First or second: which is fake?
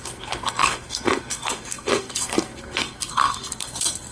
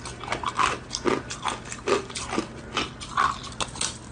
first